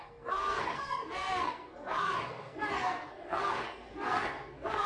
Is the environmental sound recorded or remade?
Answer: remade